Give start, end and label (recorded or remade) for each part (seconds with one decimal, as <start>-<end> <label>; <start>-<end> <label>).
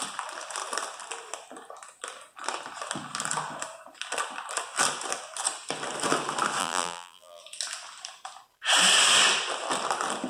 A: 0.0-6.6 recorded; 6.6-7.4 remade; 7.4-10.3 recorded